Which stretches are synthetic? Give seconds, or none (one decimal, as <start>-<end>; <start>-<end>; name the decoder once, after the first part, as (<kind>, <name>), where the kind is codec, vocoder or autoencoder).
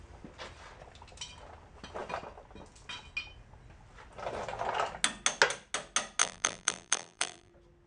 6.2-7.5 (vocoder, BigVGAN v2)